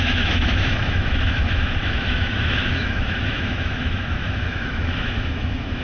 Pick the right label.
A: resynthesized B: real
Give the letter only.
A